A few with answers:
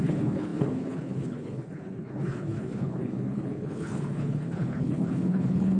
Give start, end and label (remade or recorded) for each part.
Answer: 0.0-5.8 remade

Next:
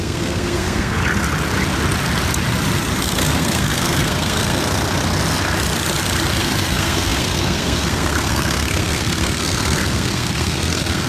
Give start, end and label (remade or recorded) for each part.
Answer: 0.0-1.0 remade; 1.0-3.1 recorded; 3.1-4.6 remade; 4.6-6.4 recorded; 6.4-11.1 remade

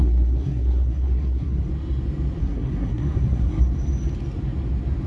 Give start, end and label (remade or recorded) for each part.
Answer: 0.0-1.7 remade; 1.7-2.4 recorded; 2.4-3.6 remade; 3.6-5.1 recorded

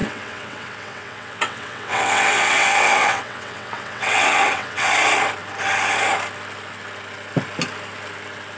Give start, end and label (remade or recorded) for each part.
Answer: 0.0-4.9 remade; 4.9-8.6 recorded